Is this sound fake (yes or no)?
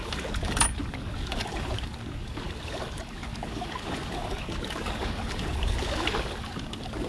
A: yes